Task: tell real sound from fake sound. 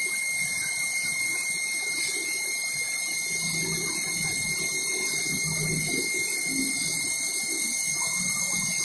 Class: real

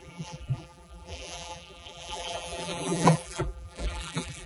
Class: fake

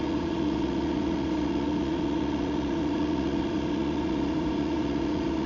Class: fake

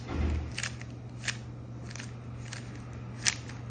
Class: real